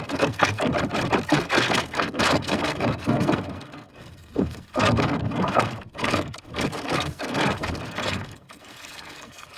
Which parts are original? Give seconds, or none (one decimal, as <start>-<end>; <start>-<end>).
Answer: 0.7-1.3